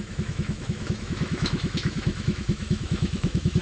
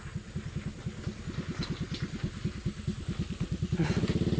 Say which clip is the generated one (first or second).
first